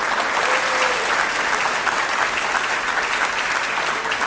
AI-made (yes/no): no